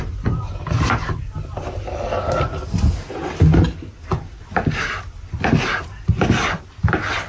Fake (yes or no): no